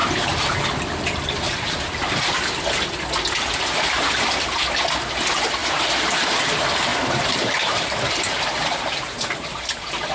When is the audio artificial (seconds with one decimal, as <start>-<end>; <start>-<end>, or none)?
5.6-6.4; 6.9-9.7